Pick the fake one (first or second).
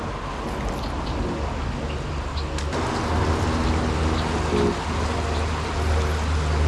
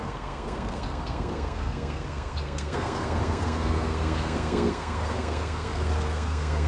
second